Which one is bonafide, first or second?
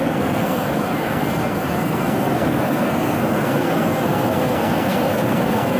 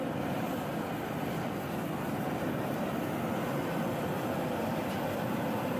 second